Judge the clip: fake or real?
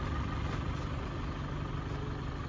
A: real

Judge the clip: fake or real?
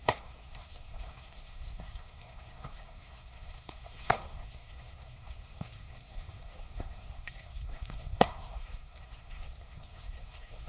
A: fake